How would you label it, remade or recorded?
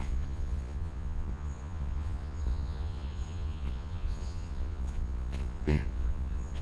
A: remade